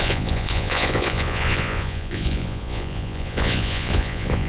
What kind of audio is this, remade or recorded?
remade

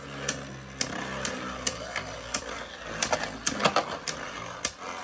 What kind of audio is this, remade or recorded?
recorded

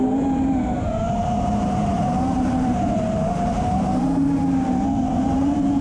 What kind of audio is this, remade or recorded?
remade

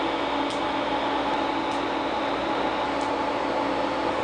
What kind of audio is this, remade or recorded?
recorded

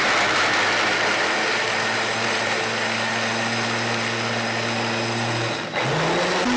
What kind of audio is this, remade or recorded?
recorded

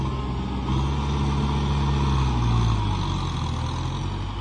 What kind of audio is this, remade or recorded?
recorded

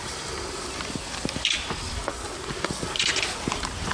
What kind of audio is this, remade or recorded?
recorded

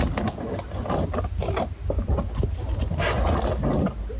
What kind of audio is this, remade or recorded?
recorded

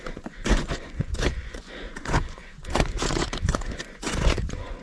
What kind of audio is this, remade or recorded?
remade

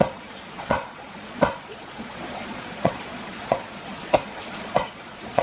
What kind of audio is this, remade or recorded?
remade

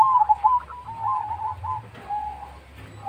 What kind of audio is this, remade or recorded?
recorded